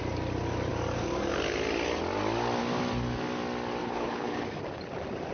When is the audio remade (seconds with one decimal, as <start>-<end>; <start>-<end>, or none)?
3.8-4.4